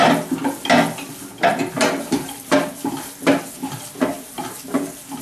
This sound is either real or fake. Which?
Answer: real